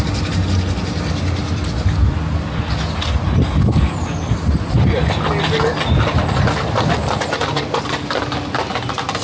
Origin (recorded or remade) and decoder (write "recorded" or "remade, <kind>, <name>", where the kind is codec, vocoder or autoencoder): recorded